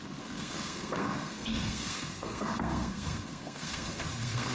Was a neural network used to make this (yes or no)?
yes